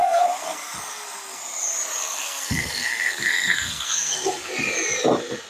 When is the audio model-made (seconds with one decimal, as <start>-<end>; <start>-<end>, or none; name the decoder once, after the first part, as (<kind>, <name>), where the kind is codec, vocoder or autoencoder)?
0.0-1.4 (codec, SNAC); 2.0-4.5